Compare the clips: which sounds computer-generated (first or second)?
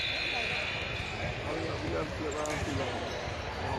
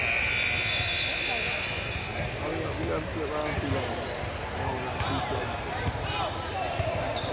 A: first